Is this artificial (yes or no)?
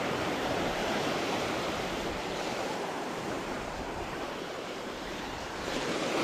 yes